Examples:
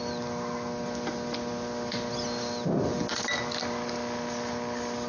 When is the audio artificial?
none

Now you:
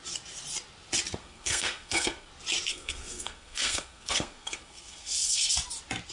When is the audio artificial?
1.2-2.3 (codec, SNAC); 2.7-5.5

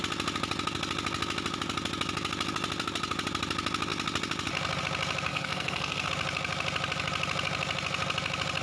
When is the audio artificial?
5.3-6.1 (codec, SNAC)